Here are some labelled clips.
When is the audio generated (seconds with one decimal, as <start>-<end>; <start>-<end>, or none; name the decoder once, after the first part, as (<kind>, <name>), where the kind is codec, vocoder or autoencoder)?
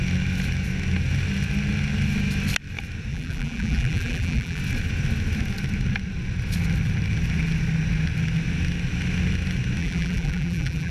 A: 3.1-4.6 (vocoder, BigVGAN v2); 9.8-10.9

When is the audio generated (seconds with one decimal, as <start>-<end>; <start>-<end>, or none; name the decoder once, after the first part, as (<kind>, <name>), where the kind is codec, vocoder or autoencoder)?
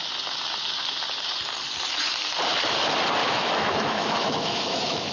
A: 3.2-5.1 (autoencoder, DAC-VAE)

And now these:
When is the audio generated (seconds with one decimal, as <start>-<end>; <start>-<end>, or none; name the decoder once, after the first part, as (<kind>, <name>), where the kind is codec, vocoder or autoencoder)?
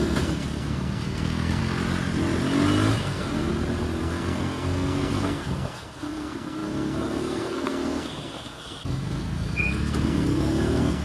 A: 0.0-1.6 (codec, SNAC); 3.0-3.5; 4.0-11.0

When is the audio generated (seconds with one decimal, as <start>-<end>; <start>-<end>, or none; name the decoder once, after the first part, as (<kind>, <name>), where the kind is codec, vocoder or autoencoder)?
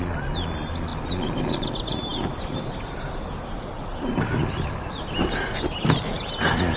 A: none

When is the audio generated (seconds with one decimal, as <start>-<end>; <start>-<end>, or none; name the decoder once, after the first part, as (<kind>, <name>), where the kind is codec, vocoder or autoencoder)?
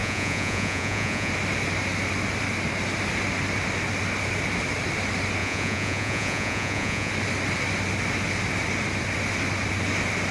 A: 0.0-1.3 (vocoder, Vocos); 5.4-7.1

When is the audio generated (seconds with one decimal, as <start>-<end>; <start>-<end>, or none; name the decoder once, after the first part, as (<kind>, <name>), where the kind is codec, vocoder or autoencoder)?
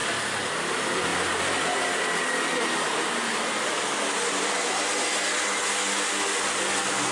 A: none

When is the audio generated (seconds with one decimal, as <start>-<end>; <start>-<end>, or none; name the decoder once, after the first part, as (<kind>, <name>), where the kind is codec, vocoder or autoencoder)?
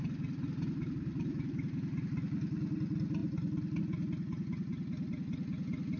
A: none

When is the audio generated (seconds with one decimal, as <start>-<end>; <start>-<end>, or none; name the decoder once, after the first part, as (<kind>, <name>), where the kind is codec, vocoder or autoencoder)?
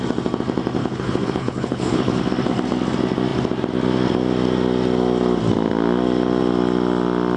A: 0.8-2.2 (codec, HILCodec)